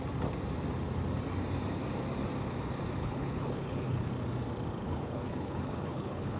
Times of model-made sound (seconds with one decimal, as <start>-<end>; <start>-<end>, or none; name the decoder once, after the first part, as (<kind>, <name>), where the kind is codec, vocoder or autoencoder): 3.0-4.1 (codec, HILCodec); 4.8-6.4